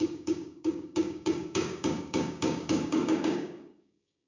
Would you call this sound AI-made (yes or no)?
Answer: yes